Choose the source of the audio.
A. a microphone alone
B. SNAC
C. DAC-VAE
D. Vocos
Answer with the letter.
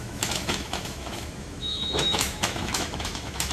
C